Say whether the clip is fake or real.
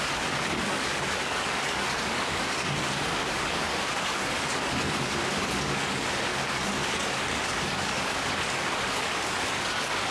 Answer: fake